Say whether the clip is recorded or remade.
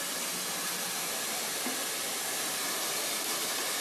recorded